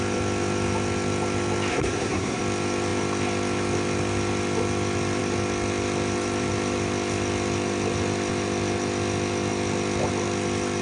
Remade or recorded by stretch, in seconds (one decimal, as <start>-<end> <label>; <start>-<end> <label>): 0.0-1.7 recorded; 1.7-2.4 remade; 2.4-10.8 recorded